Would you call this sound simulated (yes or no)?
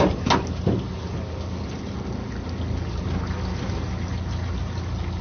no